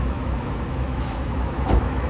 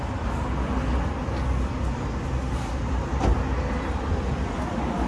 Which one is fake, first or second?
first